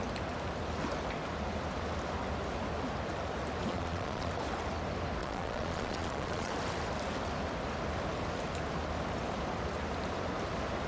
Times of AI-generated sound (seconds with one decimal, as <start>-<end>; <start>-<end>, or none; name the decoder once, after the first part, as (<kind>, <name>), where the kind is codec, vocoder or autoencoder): 3.7-4.3 (vocoder, Vocos); 5.2-6.5